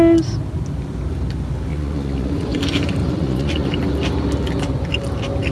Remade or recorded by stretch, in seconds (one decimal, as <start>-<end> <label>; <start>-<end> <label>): 0.0-1.7 recorded; 1.7-2.6 remade; 2.6-3.0 recorded; 3.0-3.7 remade; 3.7-5.5 recorded